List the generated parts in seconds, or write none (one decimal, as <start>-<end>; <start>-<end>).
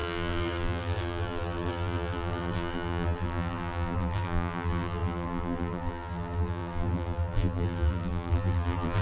0.0-9.0